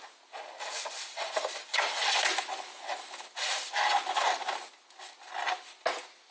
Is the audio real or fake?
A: real